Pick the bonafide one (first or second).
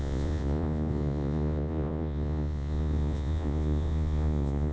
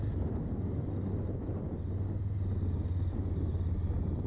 second